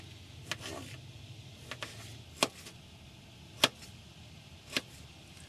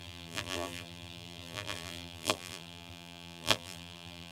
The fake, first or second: second